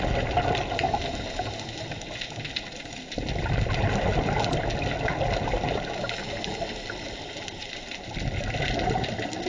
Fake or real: real